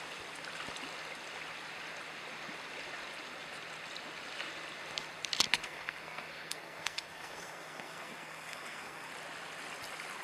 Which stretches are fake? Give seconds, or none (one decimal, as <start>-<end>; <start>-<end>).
5.6-9.1